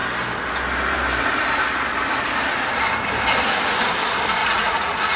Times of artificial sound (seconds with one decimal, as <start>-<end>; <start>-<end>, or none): 4.4-5.2